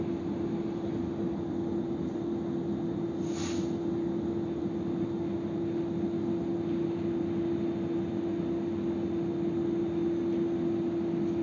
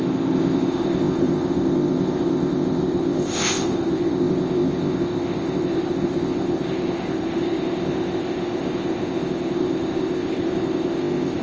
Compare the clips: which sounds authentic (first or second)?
first